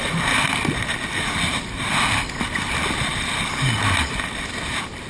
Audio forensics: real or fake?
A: real